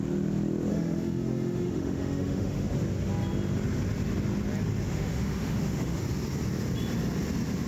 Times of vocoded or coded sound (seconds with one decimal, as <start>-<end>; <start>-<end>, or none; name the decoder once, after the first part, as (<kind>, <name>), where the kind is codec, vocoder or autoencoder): 0.7-2.7 (autoencoder, DAC-VAE); 4.9-6.0